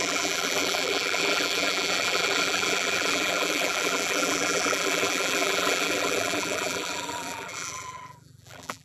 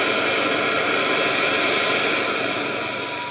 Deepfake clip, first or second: first